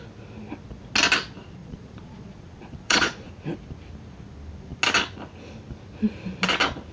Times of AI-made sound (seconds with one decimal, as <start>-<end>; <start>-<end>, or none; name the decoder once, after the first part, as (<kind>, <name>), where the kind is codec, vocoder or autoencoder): 1.6-3.3 (vocoder, Vocos)